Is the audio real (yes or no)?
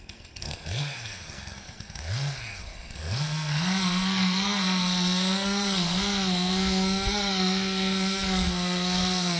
no